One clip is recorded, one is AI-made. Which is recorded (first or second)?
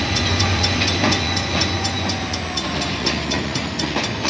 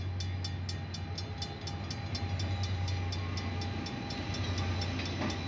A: second